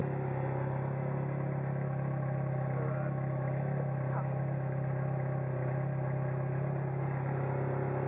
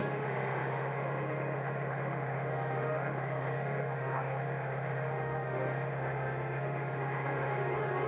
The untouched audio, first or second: first